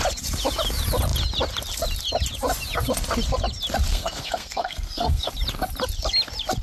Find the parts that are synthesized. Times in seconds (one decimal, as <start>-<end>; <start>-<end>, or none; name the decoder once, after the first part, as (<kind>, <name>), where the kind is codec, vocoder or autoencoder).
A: 3.9-5.3 (codec, SNAC)